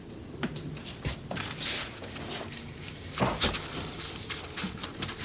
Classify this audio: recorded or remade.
recorded